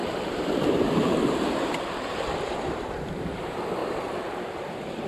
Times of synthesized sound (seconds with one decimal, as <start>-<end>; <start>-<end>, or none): 0.0-5.1